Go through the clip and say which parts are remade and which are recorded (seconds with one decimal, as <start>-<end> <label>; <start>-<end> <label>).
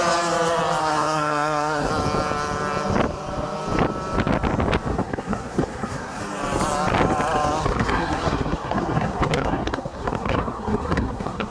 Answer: 0.0-0.8 recorded; 0.8-1.9 remade; 1.9-4.9 recorded; 4.9-6.2 remade; 6.2-7.6 recorded; 7.6-11.5 remade